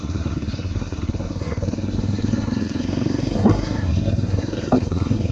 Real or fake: fake